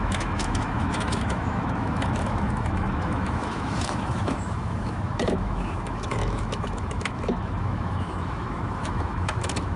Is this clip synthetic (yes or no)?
yes